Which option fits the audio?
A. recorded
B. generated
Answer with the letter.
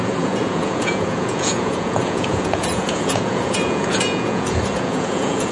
B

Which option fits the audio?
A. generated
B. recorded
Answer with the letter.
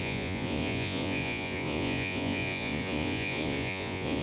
A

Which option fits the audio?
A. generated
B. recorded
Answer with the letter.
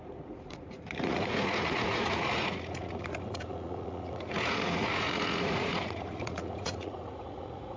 A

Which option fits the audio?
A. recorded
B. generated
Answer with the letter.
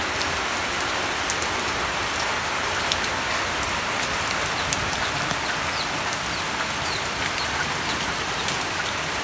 A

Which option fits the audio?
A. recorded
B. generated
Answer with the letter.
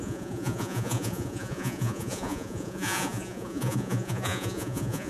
B